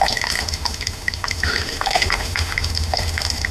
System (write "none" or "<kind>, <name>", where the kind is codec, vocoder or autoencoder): autoencoder, DAC-VAE